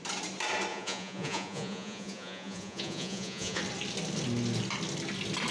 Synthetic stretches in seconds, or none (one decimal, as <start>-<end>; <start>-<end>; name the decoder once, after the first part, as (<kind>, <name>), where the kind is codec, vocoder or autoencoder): 0.7-3.6 (vocoder, Vocos)